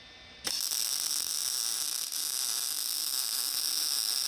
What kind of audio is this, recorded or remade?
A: recorded